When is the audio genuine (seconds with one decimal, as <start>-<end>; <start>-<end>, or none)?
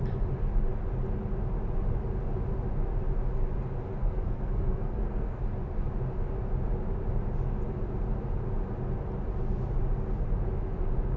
0.0-4.0; 5.4-11.2